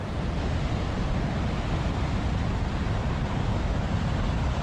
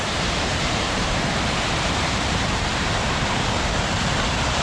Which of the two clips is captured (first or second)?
first